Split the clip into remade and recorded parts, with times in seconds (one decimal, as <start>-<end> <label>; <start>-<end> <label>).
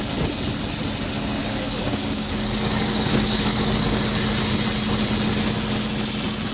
0.0-1.4 recorded; 1.4-4.0 remade; 4.0-6.5 recorded